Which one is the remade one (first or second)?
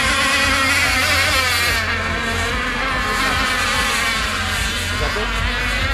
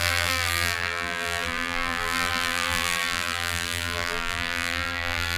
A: second